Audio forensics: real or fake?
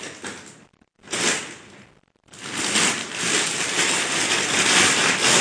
real